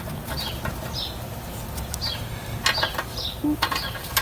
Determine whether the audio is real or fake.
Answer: real